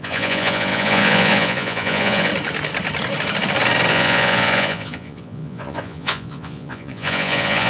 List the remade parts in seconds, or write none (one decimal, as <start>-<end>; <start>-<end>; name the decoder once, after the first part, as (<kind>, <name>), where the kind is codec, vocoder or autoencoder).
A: 0.0-2.3 (vocoder, Vocos); 3.9-7.7

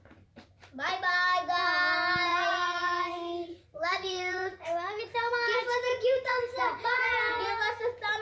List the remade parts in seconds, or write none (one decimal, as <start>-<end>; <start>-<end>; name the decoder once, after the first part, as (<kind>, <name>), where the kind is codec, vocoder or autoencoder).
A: 2.3-5.0 (vocoder, Vocos); 5.9-7.1

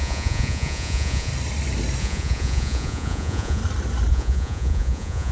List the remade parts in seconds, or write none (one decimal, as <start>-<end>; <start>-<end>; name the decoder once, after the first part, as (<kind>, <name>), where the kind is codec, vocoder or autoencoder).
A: 0.0-1.3 (vocoder, Vocos); 2.0-3.6; 4.1-5.3

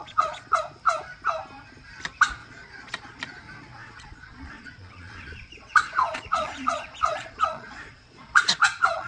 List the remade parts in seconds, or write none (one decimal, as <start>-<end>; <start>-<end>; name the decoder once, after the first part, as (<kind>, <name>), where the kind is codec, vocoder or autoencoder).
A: 0.0-0.6 (vocoder, Vocos); 2.4-3.2; 3.8-9.1